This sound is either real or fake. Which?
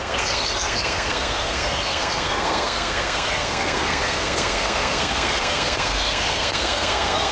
fake